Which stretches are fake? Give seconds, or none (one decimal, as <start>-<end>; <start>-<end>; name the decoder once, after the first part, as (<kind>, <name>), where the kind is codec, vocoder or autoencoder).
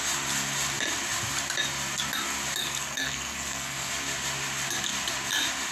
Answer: 2.6-3.9 (codec, SNAC)